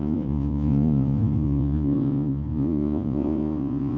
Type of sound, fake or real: fake